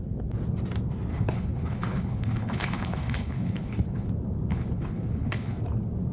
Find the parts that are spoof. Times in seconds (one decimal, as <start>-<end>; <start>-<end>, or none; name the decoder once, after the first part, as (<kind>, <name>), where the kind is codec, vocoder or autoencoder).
1.1-4.1 (codec, HILCodec); 4.5-5.6